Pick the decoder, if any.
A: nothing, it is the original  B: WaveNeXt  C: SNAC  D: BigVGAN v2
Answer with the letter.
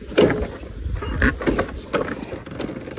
A